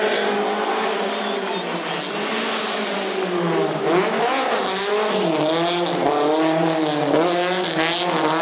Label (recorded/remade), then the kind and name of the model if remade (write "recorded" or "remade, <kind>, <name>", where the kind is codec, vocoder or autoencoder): recorded